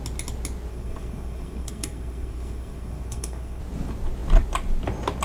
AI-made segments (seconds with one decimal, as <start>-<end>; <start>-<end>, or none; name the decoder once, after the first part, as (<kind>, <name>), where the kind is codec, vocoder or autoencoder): 0.7-3.6 (codec, SNAC)